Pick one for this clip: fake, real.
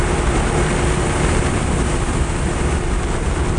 real